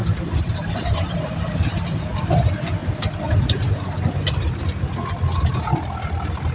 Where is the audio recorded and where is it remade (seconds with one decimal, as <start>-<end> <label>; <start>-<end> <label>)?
0.0-1.3 remade; 1.3-6.5 recorded